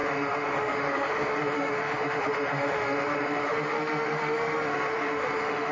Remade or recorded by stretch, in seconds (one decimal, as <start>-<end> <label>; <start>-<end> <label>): 0.0-5.7 remade